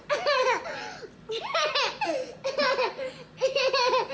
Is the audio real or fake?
real